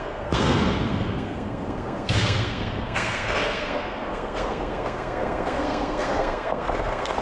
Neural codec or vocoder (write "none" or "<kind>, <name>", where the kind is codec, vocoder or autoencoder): codec, SNAC